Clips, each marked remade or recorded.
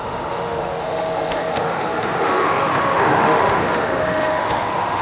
remade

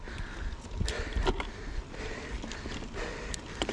recorded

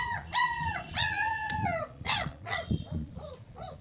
remade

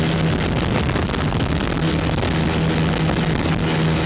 recorded